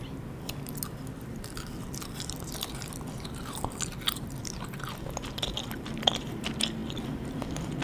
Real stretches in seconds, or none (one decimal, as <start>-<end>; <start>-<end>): 0.0-7.8